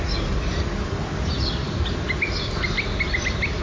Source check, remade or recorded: recorded